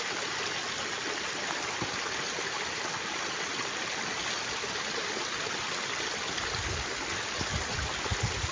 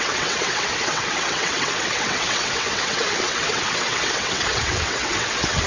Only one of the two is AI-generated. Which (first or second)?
second